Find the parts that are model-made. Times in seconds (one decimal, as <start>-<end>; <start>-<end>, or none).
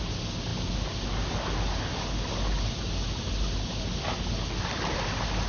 none